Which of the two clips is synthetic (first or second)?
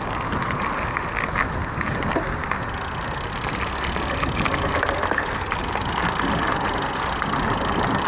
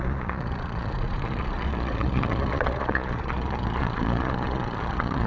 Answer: second